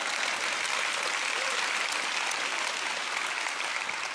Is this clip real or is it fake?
real